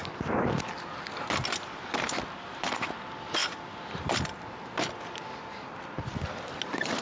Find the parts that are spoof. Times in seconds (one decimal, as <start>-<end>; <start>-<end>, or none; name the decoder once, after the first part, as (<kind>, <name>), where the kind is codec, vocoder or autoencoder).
none